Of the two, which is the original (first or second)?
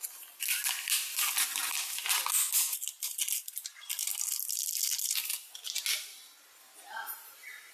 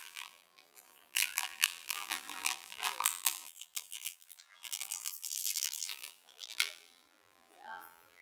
first